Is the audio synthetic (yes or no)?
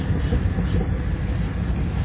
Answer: no